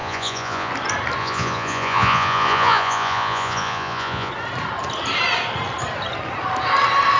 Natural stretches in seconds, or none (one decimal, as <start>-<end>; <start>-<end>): 0.7-1.2; 4.3-7.2